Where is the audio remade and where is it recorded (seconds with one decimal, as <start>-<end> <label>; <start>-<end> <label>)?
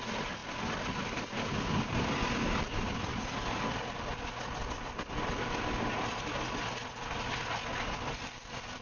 0.0-8.8 recorded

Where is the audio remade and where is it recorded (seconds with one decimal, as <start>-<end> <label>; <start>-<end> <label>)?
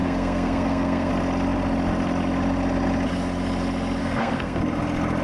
0.0-1.1 remade; 1.1-4.0 recorded; 4.0-4.6 remade; 4.6-5.2 recorded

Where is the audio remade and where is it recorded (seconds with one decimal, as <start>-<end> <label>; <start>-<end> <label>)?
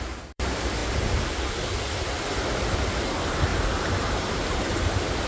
0.0-0.8 remade; 0.8-2.9 recorded; 2.9-5.3 remade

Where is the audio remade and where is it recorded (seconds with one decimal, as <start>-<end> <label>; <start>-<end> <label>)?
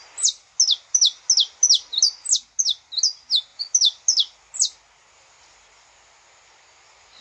0.0-7.2 recorded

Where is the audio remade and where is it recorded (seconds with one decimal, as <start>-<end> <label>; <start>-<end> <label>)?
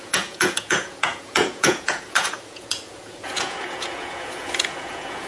0.0-5.3 remade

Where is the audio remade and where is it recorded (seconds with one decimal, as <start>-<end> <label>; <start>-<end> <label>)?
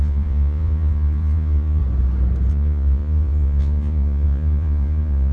0.0-1.8 remade; 1.8-2.5 recorded; 2.5-5.3 remade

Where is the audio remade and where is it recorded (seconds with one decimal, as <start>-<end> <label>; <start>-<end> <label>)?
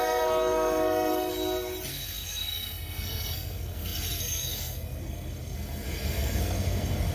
0.0-1.3 remade; 1.3-1.9 recorded; 1.9-7.1 remade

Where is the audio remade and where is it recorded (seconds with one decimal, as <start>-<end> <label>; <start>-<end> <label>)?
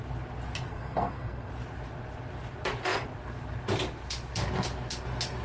0.0-0.7 recorded; 0.7-1.5 remade; 1.5-5.4 recorded